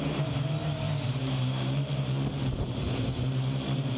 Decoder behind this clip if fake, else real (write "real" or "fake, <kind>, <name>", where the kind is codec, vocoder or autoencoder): fake, vocoder, BigVGAN v2